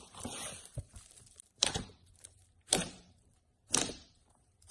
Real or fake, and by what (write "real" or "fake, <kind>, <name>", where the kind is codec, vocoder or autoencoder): fake, vocoder, BigVGAN v2